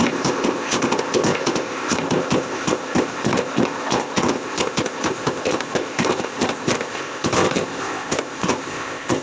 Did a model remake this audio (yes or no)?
yes